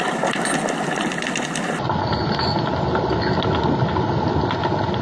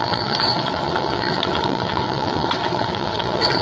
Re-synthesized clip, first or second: second